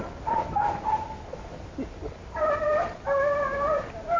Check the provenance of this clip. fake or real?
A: real